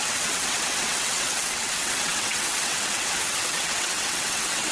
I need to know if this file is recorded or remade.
remade